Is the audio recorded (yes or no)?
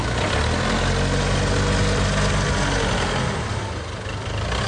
yes